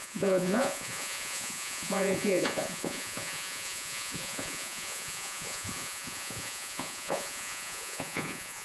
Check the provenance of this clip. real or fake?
fake